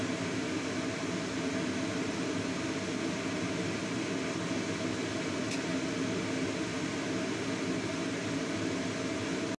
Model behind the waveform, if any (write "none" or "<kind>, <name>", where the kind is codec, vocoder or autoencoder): none